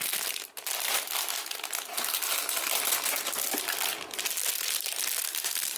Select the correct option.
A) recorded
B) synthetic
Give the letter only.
A